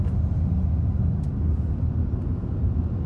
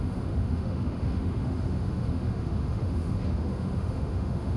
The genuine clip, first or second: first